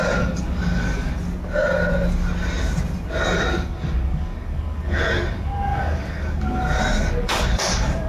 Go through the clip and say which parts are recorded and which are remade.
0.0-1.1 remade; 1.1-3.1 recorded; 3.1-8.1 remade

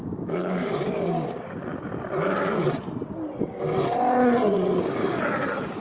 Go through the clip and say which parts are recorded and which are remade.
0.0-1.7 remade; 1.7-4.8 recorded; 4.8-5.8 remade

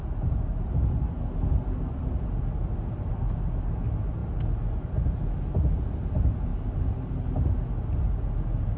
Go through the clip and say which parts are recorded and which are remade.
0.0-8.8 recorded

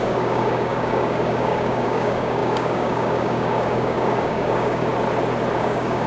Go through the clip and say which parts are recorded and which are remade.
0.0-4.9 remade; 4.9-5.6 recorded; 5.6-6.1 remade

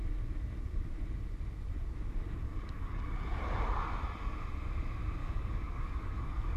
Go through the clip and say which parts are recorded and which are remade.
0.0-2.4 recorded; 2.4-3.0 remade; 3.0-5.2 recorded; 5.2-6.6 remade